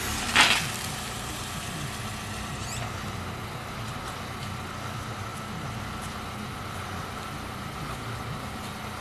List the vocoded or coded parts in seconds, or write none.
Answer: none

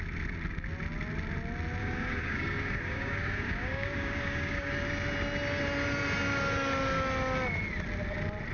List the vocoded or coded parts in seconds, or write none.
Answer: 1.8-4.7 (codec, DAC)

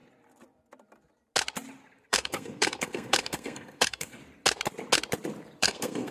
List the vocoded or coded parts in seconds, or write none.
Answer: 2.1-4.2 (codec, SNAC); 5.6-6.1

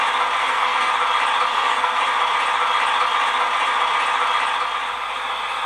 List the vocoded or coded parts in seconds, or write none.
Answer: 0.4-0.9 (codec, SNAC); 1.5-2.0